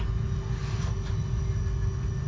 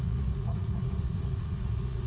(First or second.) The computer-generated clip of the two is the second